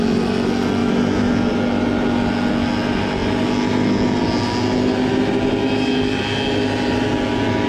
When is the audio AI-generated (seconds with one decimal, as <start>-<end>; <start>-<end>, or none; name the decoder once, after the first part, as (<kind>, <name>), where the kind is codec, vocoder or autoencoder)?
0.8-1.3 (autoencoder, DAC-VAE)